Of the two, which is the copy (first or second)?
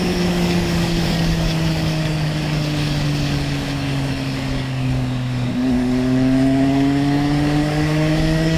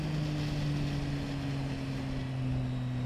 first